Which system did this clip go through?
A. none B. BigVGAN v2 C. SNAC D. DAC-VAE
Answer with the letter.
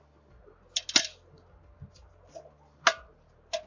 A